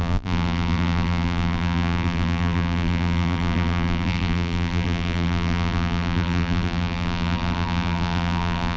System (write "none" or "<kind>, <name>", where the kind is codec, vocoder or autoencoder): vocoder, BigVGAN v2